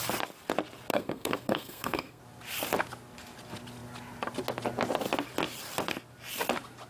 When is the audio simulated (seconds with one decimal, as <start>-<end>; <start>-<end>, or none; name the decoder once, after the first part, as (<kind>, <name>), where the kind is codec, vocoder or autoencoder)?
0.9-2.2 (codec, SNAC)